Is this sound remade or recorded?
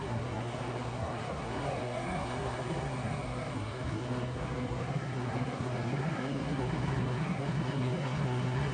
remade